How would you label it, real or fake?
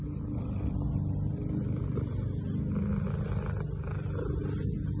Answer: real